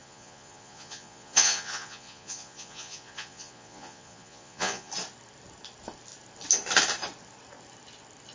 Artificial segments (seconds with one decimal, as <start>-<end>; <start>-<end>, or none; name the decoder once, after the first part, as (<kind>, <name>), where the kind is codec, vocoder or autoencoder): 0.0-4.9 (vocoder, Vocos)